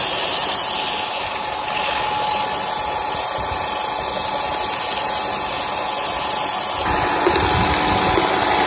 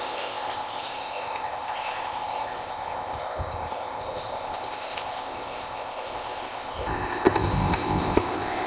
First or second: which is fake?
second